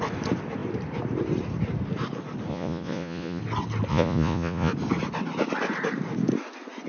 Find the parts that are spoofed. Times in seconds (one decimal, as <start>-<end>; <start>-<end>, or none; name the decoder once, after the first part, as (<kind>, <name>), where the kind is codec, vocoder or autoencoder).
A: 2.5-3.4 (vocoder, Vocos); 3.9-4.7